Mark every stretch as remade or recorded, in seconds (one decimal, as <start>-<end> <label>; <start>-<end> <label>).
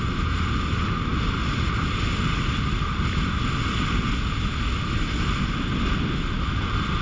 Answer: 0.0-7.0 recorded